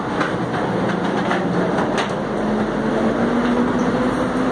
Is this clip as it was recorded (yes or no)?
yes